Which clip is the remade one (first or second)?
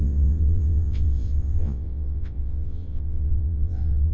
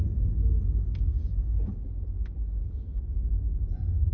first